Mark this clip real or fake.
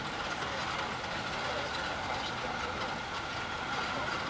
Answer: real